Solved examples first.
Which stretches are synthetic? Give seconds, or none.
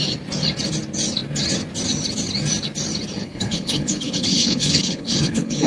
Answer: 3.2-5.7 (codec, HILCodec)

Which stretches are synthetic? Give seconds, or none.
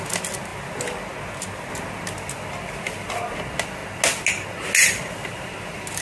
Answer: none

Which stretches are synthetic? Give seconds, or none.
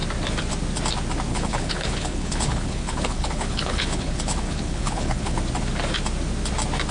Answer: 1.3-5.4 (codec, HILCodec)